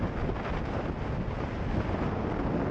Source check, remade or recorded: recorded